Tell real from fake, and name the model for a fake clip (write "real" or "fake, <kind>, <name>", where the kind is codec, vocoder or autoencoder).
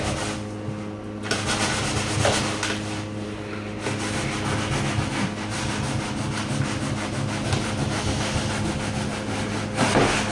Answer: real